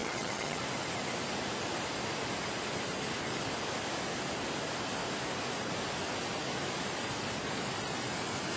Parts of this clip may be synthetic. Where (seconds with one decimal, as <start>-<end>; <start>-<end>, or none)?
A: 0.0-0.6